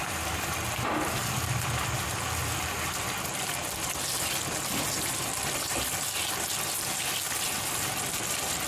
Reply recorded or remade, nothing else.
recorded